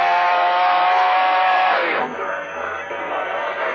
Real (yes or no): no